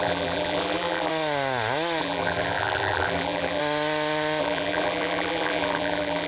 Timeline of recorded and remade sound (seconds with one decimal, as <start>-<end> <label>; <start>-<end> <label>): 0.0-1.1 remade; 1.1-2.0 recorded; 2.0-3.6 remade; 3.6-4.4 recorded; 4.4-6.3 remade